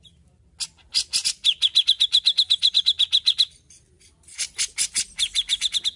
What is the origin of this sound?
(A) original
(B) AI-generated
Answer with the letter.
A